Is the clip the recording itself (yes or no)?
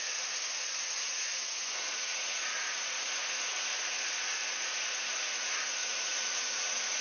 no